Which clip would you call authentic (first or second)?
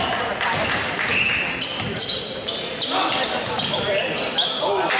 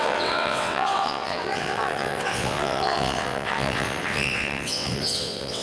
first